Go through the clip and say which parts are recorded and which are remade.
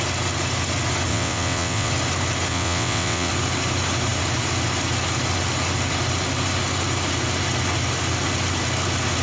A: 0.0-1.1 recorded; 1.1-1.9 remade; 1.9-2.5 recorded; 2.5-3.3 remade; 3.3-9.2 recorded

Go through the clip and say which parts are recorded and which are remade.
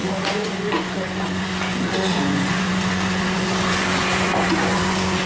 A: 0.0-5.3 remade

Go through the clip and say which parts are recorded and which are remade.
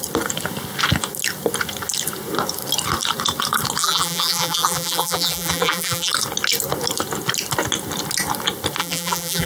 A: 0.0-3.8 recorded; 3.8-6.1 remade; 6.1-8.8 recorded; 8.8-9.5 remade